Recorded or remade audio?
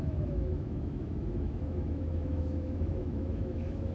remade